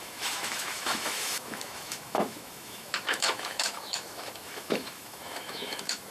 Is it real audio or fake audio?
fake